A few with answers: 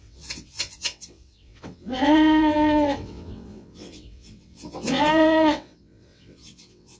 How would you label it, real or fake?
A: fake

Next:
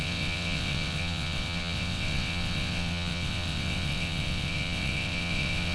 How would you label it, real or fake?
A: fake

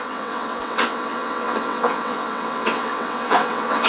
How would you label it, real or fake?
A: fake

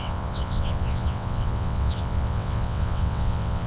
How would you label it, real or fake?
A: fake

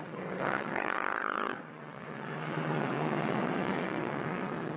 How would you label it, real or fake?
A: fake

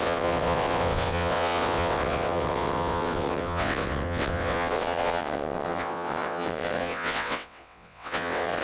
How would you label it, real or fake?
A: fake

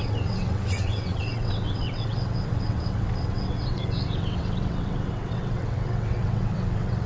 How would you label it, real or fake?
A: fake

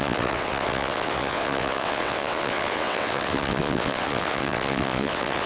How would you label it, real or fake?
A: fake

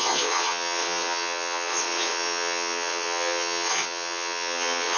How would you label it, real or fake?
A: fake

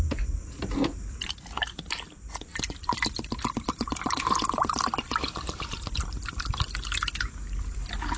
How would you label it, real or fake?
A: real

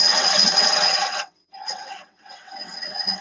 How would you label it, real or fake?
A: fake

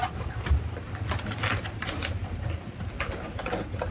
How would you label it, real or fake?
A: real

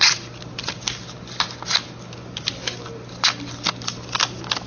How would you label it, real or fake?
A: real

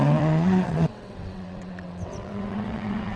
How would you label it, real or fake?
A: fake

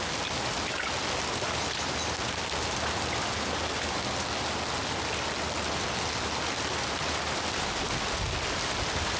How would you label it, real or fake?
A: real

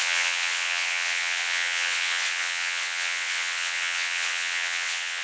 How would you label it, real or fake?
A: fake